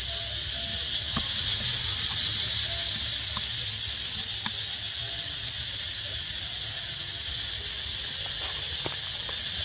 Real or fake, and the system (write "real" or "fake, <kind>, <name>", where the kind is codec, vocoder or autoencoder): real